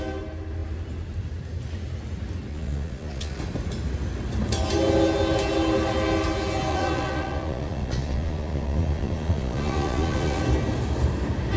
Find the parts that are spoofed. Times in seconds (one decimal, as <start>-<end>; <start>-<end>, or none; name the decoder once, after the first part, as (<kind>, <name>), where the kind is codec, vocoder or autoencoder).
2.5-3.4 (vocoder, Vocos); 6.7-10.4